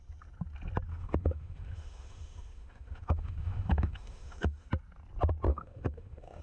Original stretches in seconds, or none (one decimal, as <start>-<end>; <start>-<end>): 0.0-0.9; 4.7-5.5